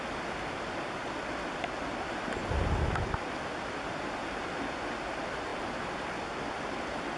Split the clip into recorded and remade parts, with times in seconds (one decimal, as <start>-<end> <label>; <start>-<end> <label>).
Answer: 0.0-7.2 recorded